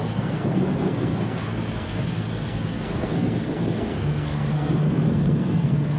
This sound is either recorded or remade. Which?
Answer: remade